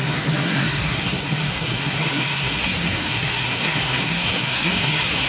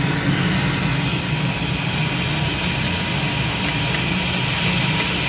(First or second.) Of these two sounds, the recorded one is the second